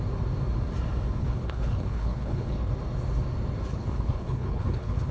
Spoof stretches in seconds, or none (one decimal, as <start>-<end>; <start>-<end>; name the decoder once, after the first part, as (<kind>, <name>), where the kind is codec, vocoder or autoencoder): 1.2-2.7 (codec, HILCodec); 3.7-5.1